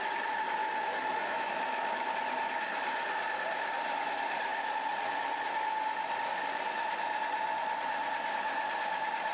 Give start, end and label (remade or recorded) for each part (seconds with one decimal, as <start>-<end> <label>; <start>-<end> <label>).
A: 0.0-0.6 recorded; 0.6-2.1 remade; 2.1-9.3 recorded